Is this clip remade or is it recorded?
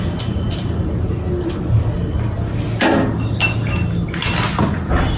recorded